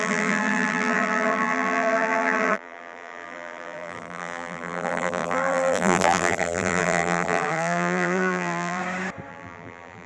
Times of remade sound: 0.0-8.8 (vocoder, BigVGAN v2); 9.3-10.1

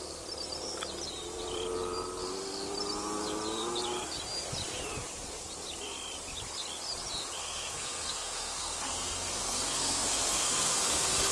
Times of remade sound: 7.4-11.3 (codec, SNAC)

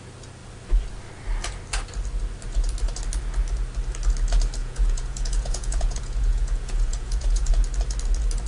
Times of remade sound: 4.6-7.5 (vocoder, Vocos)

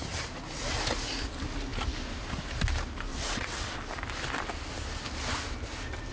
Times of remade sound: 3.1-3.8 (vocoder, WaveNeXt)

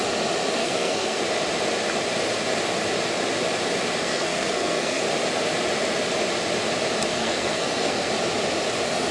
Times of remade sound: 0.6-1.2 (codec, SNAC); 4.0-5.0; 7.1-8.1

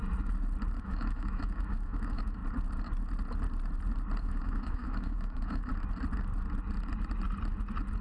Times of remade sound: 0.8-2.4 (autoencoder, DAC-VAE); 4.2-5.7